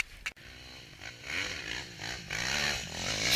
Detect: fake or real real